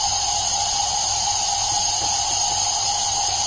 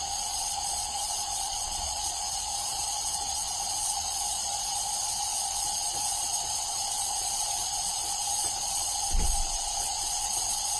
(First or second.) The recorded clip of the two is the first